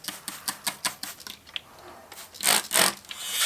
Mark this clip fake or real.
real